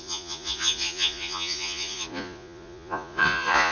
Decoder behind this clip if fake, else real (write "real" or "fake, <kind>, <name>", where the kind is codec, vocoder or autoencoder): fake, vocoder, Vocos